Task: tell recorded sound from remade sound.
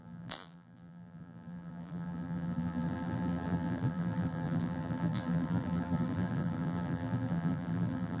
remade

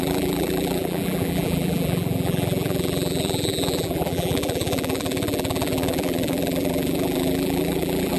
remade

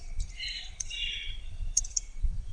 remade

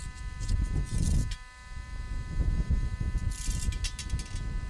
recorded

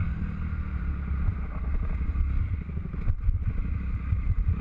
recorded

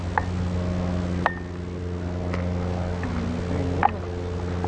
recorded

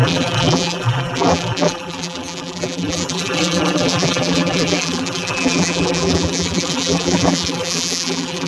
remade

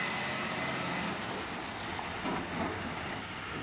recorded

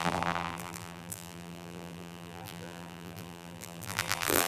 remade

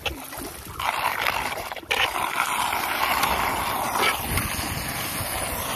recorded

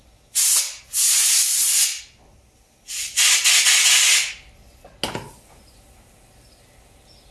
recorded